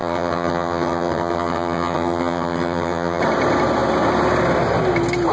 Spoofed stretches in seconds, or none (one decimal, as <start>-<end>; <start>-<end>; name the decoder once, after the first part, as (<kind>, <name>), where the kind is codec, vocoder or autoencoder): 0.0-3.2 (vocoder, HiFi-GAN)